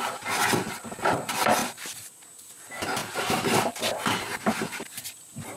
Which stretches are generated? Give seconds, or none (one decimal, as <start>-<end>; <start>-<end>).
1.6-2.5; 3.0-5.6